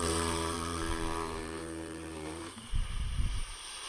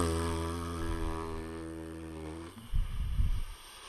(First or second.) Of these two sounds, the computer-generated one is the first